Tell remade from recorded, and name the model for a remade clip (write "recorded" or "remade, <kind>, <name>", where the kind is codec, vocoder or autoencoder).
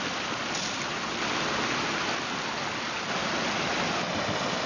recorded